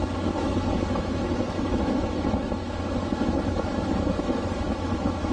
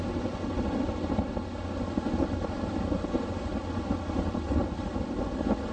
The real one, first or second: second